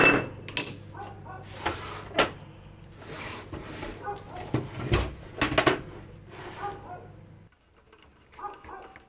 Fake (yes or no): no